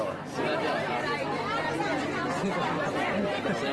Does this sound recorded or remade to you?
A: remade